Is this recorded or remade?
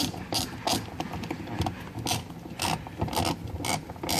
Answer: recorded